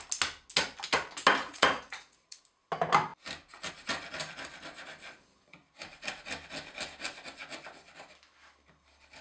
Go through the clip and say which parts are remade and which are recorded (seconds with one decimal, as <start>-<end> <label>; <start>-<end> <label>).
0.0-1.4 recorded; 1.4-2.4 remade; 2.4-9.2 recorded